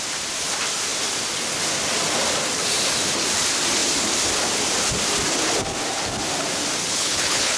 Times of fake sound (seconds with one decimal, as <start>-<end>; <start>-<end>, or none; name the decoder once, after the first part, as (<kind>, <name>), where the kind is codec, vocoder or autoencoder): 6.8-7.6 (codec, HILCodec)